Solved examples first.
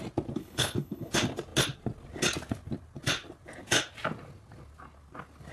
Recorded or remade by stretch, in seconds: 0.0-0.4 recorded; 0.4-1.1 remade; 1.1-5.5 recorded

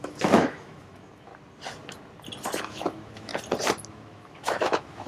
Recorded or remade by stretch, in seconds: 0.0-1.3 remade; 1.3-2.6 recorded; 2.6-3.3 remade; 3.3-3.9 recorded; 3.9-5.1 remade